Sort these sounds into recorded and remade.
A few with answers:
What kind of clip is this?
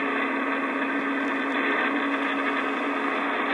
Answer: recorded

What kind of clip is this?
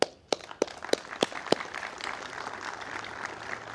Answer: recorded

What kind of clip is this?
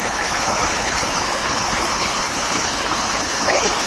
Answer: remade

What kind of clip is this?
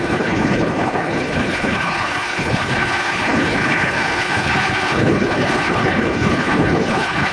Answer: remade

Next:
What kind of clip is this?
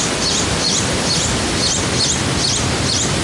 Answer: recorded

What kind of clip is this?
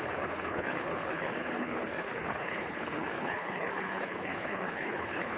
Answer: remade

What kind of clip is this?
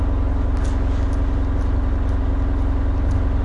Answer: recorded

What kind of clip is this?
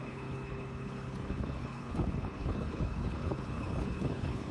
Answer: remade